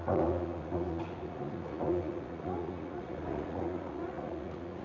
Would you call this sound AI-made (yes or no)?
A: yes